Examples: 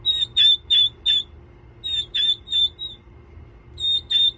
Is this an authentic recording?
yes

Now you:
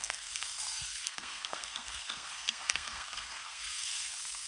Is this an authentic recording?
no